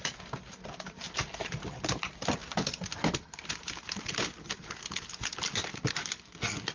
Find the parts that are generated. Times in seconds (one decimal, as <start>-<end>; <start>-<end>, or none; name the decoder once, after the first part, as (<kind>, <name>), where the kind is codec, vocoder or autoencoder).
none